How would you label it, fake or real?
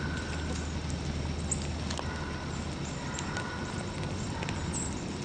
real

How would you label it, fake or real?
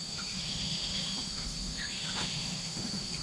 fake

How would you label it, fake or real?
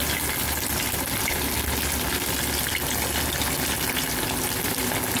real